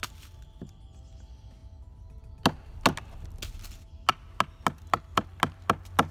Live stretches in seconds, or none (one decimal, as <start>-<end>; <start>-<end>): 0.0-6.1